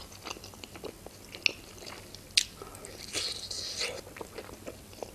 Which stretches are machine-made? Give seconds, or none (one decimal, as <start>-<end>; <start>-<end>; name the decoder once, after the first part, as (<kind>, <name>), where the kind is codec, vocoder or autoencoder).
none